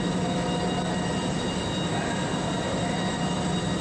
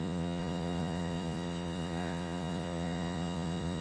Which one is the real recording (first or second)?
first